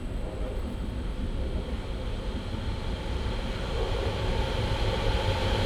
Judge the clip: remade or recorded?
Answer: recorded